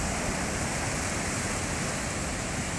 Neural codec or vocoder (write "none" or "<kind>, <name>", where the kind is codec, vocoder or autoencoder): none